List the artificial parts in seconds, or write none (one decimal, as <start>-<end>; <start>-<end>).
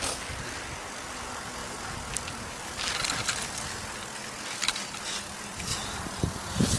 none